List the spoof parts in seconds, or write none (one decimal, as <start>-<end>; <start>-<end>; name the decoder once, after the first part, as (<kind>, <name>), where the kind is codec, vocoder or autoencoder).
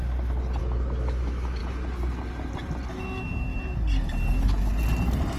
0.6-1.6 (autoencoder, DAC-VAE); 2.9-3.5; 4.3-4.7